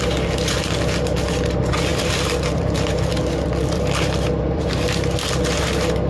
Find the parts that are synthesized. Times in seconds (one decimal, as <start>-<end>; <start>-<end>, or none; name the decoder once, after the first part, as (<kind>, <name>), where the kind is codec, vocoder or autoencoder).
1.9-2.6 (vocoder, BigVGAN v2); 3.1-4.6